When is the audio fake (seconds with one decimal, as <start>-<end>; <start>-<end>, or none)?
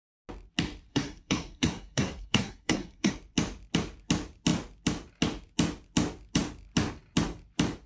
0.9-3.1